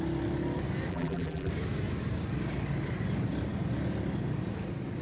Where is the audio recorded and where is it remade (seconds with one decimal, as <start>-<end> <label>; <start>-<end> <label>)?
0.0-0.9 recorded; 0.9-1.5 remade; 1.5-5.0 recorded